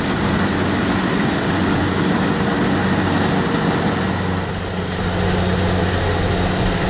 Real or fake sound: real